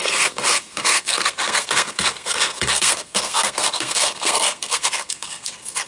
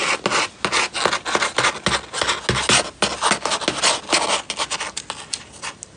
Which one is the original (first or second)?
second